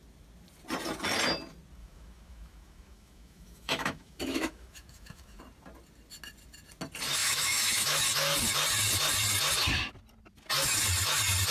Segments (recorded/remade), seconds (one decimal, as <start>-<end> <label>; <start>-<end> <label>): 0.0-1.8 recorded; 1.8-5.4 remade; 5.4-7.2 recorded; 7.2-8.0 remade; 8.0-11.5 recorded